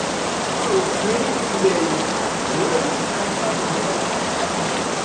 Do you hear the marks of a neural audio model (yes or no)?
no